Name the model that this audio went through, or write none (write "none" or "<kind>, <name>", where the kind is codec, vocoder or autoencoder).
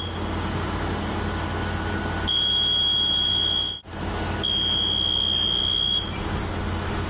none